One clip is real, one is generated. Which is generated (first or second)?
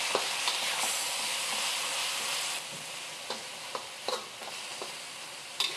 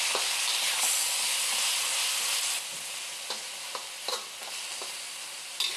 first